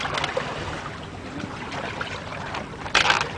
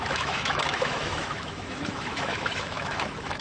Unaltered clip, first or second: first